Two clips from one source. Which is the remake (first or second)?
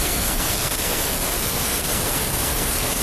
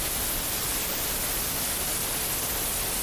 first